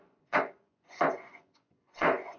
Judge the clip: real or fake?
fake